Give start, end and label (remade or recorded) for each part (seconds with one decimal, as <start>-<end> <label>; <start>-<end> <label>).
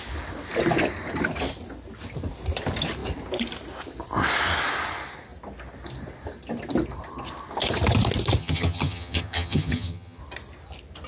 0.0-8.4 recorded; 8.4-10.2 remade; 10.2-11.1 recorded